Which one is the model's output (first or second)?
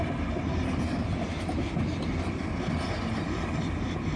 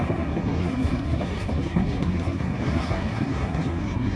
second